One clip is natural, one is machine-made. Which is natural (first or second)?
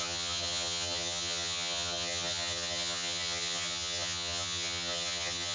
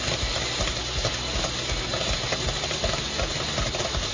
second